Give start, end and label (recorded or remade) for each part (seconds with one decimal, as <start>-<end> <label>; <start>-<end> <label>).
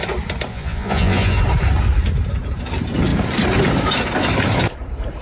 0.0-0.5 recorded; 0.5-1.4 remade; 1.4-5.2 recorded